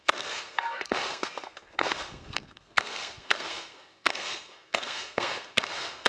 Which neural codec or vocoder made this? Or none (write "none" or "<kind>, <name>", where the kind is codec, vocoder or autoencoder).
codec, SNAC